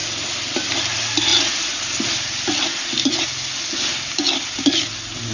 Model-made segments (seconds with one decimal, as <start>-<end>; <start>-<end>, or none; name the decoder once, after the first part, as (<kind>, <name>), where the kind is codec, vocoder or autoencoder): none

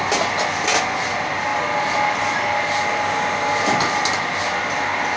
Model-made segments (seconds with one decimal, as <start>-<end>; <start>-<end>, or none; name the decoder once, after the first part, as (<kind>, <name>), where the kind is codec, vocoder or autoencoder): none

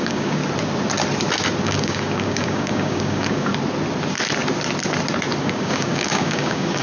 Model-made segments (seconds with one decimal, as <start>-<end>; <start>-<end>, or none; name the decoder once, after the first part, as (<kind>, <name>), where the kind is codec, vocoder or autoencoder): 0.0-0.4 (codec, DAC); 1.6-3.5; 5.4-6.8

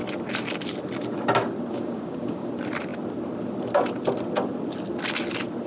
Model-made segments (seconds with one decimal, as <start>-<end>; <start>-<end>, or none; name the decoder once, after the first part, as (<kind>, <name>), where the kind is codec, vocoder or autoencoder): 1.7-2.5 (codec, DAC)

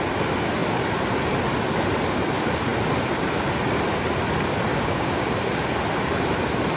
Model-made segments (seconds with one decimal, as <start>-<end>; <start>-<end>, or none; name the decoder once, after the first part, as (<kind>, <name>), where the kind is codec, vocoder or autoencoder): 4.7-5.3 (codec, DAC)

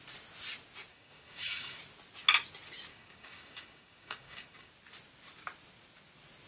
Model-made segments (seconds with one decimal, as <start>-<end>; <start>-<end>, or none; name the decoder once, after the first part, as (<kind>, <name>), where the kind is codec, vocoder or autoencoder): 0.9-1.8 (codec, DAC); 2.9-4.7